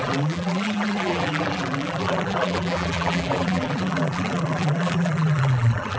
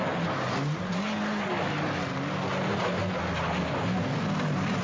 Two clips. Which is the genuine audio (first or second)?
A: second